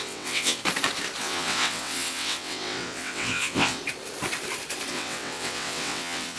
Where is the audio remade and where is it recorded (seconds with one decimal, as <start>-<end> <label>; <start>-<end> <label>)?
0.0-0.6 remade; 0.6-1.2 recorded; 1.2-3.8 remade; 3.8-4.9 recorded; 4.9-6.4 remade